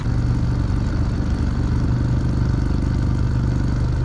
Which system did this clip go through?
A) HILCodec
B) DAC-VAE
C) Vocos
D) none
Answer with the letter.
D